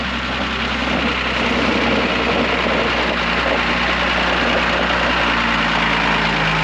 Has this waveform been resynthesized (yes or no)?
no